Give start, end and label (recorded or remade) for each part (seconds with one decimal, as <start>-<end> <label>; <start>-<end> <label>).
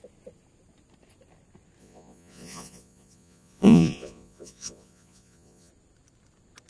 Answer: 0.0-1.8 recorded; 1.8-5.7 remade; 5.7-6.7 recorded